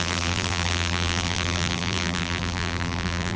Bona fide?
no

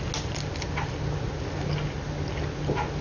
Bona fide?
yes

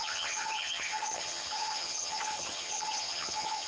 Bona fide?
no